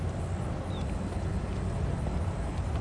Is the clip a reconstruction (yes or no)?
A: no